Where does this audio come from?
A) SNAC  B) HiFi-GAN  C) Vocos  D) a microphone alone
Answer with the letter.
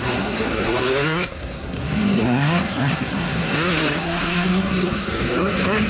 A